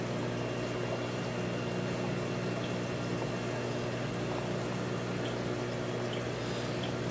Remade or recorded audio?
recorded